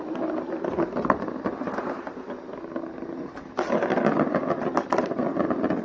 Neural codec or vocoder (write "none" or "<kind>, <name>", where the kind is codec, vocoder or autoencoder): none